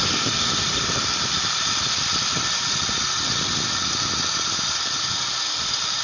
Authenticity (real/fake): real